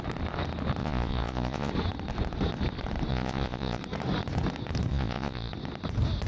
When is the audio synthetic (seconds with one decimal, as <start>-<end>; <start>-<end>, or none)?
0.8-1.7; 3.1-3.8; 4.9-5.5

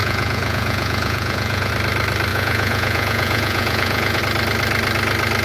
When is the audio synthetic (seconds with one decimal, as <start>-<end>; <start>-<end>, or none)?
0.0-1.7; 2.3-4.2

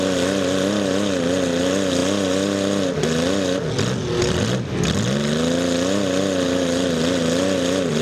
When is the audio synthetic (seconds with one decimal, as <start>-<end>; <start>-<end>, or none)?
none

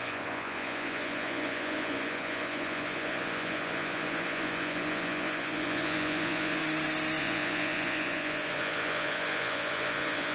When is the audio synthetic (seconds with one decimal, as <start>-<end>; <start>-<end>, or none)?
0.0-6.6; 7.2-10.3

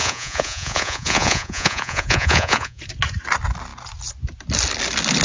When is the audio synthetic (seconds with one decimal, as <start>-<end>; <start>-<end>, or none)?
0.0-2.8

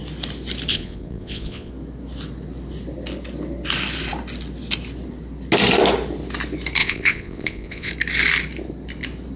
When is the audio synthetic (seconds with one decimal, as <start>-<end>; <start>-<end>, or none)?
0.7-1.7; 6.8-7.9

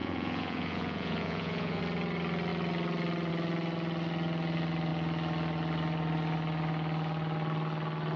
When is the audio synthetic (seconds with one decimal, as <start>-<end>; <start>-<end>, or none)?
0.0-1.8